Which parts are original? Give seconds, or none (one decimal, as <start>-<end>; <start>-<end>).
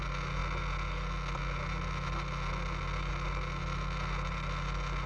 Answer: 0.0-5.1